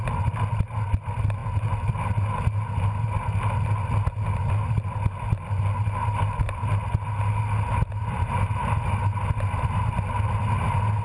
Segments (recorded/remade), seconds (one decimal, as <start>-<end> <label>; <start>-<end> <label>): 0.0-11.0 recorded